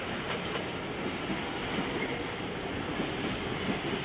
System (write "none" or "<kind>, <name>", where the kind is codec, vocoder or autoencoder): none